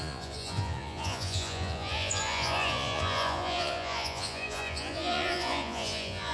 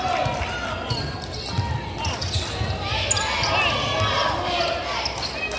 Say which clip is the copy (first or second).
first